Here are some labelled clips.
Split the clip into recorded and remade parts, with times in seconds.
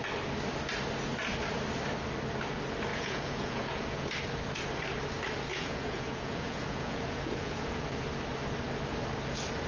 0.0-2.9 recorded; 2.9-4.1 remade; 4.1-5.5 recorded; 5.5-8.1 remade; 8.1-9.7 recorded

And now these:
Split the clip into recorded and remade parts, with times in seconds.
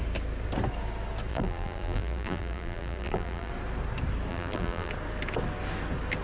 0.0-1.3 recorded; 1.3-3.5 remade; 3.5-4.3 recorded; 4.3-4.9 remade; 4.9-6.2 recorded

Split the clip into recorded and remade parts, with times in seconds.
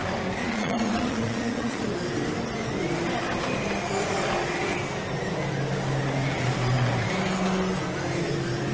0.0-0.4 recorded; 0.4-1.9 remade; 1.9-8.7 recorded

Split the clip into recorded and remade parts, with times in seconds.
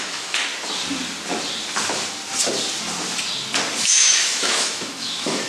0.0-0.5 remade; 0.5-3.8 recorded; 3.8-5.5 remade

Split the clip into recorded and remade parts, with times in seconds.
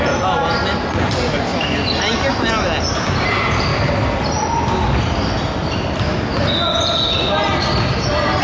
0.0-8.4 recorded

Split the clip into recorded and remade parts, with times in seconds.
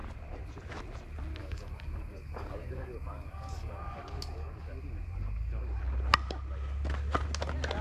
0.0-1.4 recorded; 1.4-5.8 remade; 5.8-7.8 recorded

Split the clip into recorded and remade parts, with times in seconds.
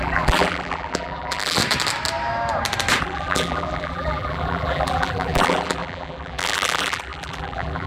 0.0-1.6 remade; 1.6-3.0 recorded; 3.0-7.9 remade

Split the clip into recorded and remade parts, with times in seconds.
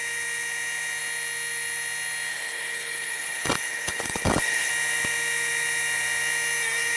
0.0-2.3 recorded; 2.3-4.7 remade; 4.7-7.0 recorded